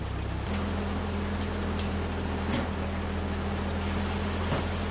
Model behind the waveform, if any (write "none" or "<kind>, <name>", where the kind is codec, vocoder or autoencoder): none